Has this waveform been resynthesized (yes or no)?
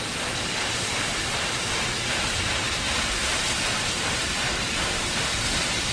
yes